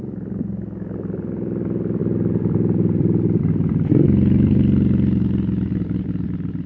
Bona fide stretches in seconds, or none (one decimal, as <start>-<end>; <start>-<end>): 0.0-6.7